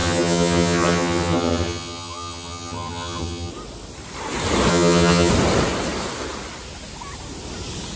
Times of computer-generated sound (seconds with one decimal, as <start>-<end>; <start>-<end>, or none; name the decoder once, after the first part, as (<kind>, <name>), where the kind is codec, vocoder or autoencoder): 0.0-3.5 (vocoder, HiFi-GAN); 4.7-5.3